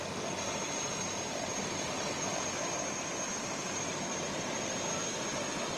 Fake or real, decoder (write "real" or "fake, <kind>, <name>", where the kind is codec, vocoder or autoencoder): fake, vocoder, BigVGAN v2